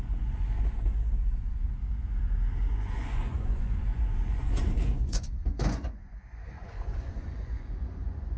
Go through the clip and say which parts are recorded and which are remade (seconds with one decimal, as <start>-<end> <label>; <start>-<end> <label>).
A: 0.0-1.7 remade; 1.7-2.7 recorded; 2.7-8.4 remade